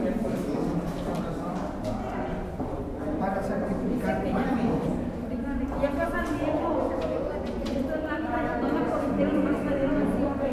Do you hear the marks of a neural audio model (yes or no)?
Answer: yes